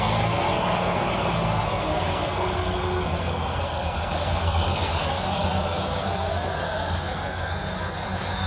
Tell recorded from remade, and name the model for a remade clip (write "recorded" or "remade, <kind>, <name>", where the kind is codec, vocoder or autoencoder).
remade, codec, SNAC